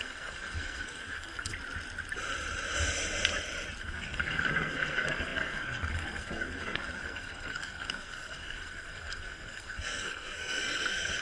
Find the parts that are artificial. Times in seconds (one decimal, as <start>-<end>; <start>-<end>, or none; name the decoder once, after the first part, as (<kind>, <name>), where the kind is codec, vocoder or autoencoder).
0.0-1.5 (codec, SNAC); 3.8-11.2

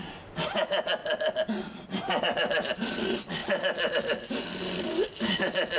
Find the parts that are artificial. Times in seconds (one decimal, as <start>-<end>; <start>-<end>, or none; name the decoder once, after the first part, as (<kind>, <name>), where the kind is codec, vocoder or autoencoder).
none

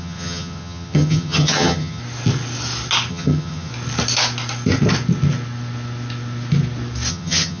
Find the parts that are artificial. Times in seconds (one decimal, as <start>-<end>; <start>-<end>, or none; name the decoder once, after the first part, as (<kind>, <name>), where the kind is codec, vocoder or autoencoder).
0.0-2.0 (vocoder, HiFi-GAN); 3.1-3.7; 7.1-7.6

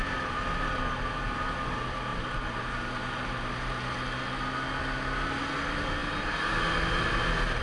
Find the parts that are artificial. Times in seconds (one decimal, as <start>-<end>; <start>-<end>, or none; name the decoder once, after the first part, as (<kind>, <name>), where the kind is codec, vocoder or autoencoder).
2.1-3.5 (vocoder, BigVGAN v2)

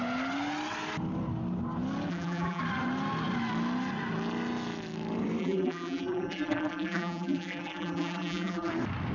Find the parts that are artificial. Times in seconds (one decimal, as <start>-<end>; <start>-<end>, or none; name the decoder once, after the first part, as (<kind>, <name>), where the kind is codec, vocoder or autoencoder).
2.1-2.6 (vocoder, BigVGAN v2); 5.4-8.7

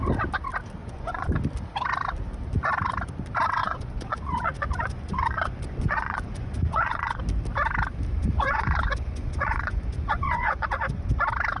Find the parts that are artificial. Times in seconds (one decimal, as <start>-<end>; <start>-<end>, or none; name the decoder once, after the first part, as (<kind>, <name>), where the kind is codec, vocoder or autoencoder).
0.8-1.3 (vocoder, Vocos); 3.6-7.2; 8.2-11.2

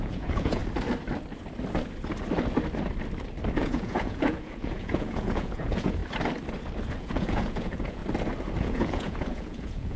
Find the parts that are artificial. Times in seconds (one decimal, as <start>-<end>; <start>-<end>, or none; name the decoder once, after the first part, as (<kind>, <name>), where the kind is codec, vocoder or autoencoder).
0.0-0.6 (vocoder, Vocos); 3.6-6.0; 7.0-8.0; 8.6-10.0

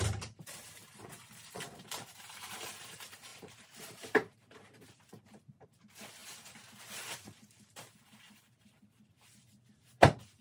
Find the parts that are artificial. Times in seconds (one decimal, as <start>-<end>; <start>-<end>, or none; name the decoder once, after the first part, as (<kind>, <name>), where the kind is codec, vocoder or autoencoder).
0.0-10.4 (vocoder, BigVGAN v2)